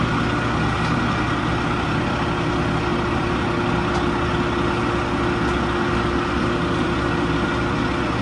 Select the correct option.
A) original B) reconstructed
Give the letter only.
A